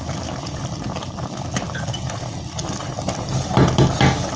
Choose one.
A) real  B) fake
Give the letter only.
A